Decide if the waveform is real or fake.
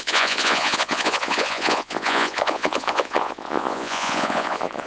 fake